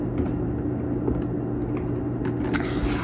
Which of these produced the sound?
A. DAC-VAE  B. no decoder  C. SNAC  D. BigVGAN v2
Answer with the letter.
B